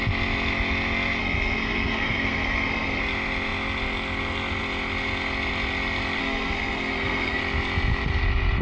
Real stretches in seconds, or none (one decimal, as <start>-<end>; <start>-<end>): 0.0-1.2; 3.0-6.2; 7.4-8.6